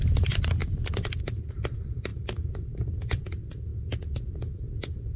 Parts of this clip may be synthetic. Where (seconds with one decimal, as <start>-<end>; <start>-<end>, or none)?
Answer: 0.0-3.7; 4.3-5.2